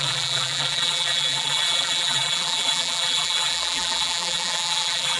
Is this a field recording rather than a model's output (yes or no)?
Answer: no